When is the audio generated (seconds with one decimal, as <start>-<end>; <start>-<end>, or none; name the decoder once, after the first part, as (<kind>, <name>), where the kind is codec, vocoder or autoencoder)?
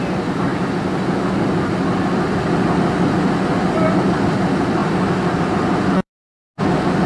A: 0.0-0.5 (vocoder, BigVGAN v2); 4.1-4.8; 5.4-6.1